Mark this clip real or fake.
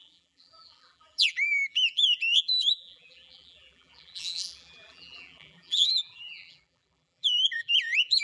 fake